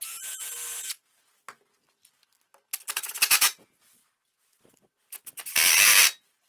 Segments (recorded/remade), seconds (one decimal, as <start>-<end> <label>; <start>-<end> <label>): 0.0-0.5 remade; 0.5-3.0 recorded; 3.0-4.0 remade; 4.0-6.5 recorded

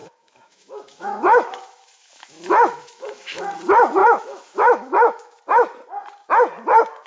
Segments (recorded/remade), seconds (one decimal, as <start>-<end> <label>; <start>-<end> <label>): 0.0-3.4 remade; 3.4-4.0 recorded; 4.0-5.4 remade; 5.4-7.1 recorded

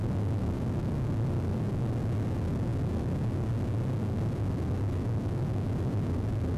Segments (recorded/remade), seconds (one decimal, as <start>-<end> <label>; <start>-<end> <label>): 0.0-6.6 recorded

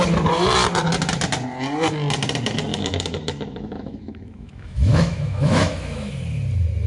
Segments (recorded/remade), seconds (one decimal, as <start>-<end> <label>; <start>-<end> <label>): 0.0-2.7 recorded; 2.7-6.1 remade; 6.1-6.9 recorded

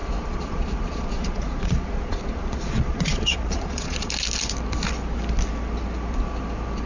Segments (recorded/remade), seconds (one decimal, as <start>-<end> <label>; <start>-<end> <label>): 0.0-4.1 remade; 4.1-6.9 recorded

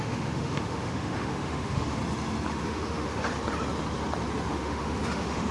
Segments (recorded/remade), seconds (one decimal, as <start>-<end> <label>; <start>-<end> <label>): 0.0-2.0 remade; 2.0-2.5 recorded; 2.5-3.3 remade; 3.3-4.5 recorded; 4.5-5.5 remade